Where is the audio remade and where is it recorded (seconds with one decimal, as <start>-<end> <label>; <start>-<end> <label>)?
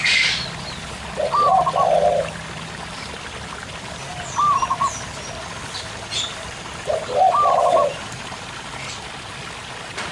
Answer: 0.0-4.1 remade; 4.1-7.0 recorded; 7.0-10.1 remade